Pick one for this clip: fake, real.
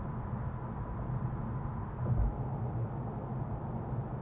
real